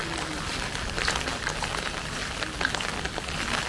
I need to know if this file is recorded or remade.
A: recorded